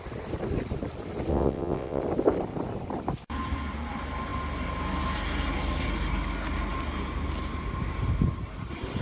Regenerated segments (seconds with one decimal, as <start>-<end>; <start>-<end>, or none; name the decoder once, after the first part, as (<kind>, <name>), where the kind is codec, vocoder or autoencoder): 1.3-2.0 (vocoder, WaveNeXt)

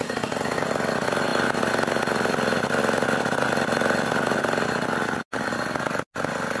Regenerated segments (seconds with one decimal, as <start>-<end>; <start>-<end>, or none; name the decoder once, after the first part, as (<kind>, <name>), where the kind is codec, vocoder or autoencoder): none

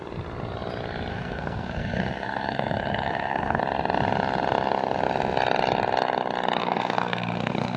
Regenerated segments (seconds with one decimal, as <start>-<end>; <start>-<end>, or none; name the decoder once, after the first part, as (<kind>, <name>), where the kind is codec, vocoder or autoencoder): 1.1-3.6 (codec, SNAC); 6.6-7.8

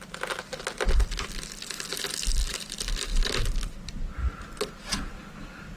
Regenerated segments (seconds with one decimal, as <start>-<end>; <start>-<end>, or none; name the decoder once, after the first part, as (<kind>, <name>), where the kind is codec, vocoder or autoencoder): none